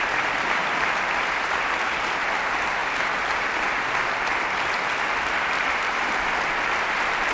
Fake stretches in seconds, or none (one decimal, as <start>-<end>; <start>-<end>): 0.0-2.8; 5.5-7.3